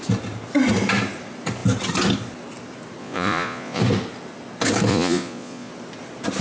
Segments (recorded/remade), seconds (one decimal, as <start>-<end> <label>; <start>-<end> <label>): 0.0-3.0 recorded; 3.0-3.8 remade; 3.8-4.9 recorded; 4.9-5.7 remade; 5.7-6.4 recorded

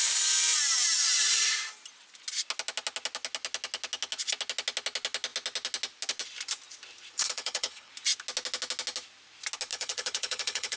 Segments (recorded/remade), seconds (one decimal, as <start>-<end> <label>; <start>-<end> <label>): 0.0-7.2 recorded; 7.2-7.9 remade; 7.9-9.7 recorded; 9.7-10.8 remade

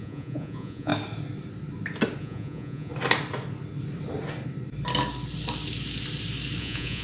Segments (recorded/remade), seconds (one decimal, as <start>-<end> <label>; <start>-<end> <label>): 0.0-0.9 remade; 0.9-2.2 recorded; 2.2-2.9 remade; 2.9-6.6 recorded; 6.6-7.0 remade

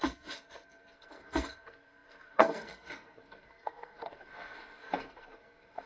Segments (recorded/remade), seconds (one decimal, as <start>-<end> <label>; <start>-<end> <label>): 0.0-5.9 remade

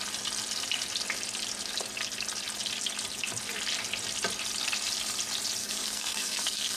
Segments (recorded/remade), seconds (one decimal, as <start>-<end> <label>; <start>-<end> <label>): 0.0-5.6 recorded; 5.6-6.8 remade

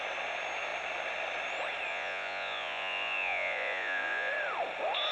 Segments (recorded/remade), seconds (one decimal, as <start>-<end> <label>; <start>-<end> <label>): 0.0-1.9 recorded; 1.9-4.3 remade; 4.3-5.1 recorded

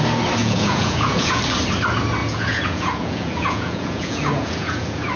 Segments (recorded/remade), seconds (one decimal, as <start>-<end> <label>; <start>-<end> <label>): 0.0-0.4 recorded; 0.4-1.4 remade; 1.4-2.2 recorded; 2.2-5.2 remade

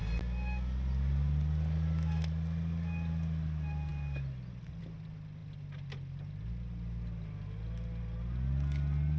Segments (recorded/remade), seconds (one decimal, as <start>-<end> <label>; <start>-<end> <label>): 0.0-9.2 recorded